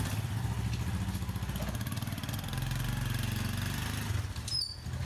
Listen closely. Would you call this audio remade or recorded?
recorded